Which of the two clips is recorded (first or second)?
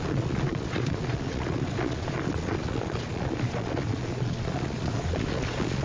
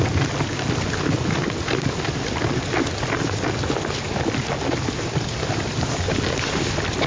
second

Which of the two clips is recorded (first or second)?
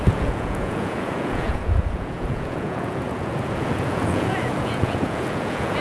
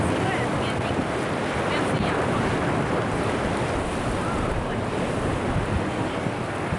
second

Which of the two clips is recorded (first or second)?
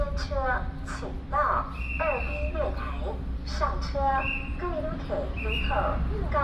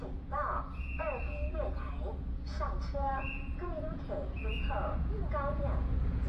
first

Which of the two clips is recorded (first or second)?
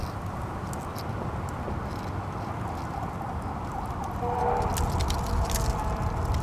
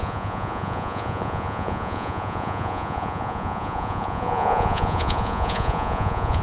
first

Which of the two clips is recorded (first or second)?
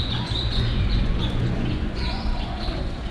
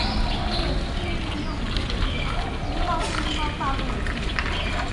second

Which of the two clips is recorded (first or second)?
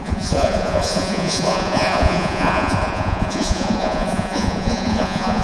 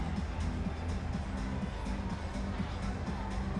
second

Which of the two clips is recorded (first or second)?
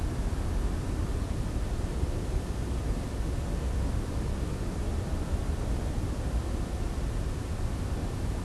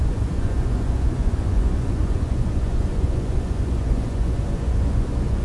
first